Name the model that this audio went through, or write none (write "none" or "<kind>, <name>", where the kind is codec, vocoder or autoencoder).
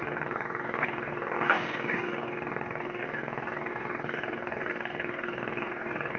codec, DAC